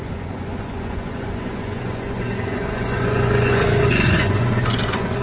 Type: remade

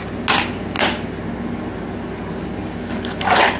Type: recorded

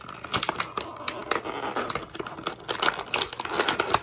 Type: recorded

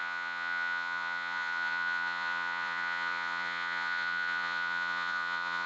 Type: remade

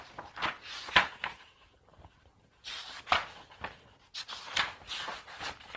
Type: recorded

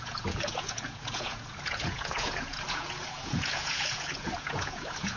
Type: remade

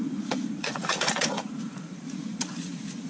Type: remade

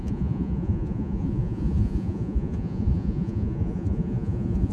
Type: remade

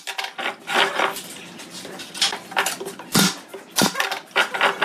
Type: recorded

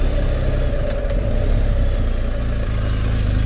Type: recorded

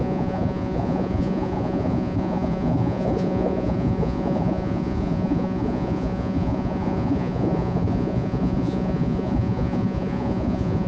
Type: remade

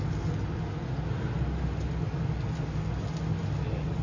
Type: recorded